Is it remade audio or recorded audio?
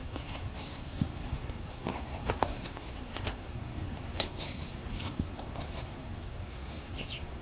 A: remade